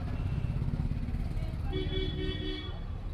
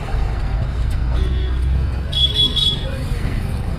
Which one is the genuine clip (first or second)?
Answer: first